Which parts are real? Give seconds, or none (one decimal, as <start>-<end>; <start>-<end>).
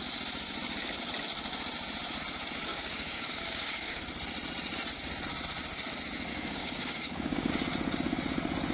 0.0-2.7; 4.0-6.3; 7.5-8.7